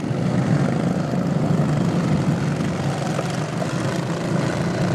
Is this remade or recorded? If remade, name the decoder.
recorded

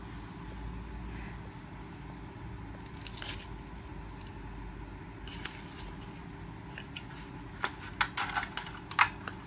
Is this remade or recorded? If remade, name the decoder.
recorded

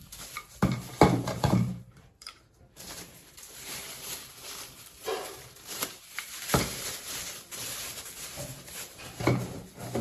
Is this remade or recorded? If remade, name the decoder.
remade, vocoder, BigVGAN v2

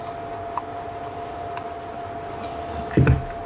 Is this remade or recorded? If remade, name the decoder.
recorded